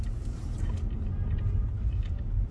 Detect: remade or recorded recorded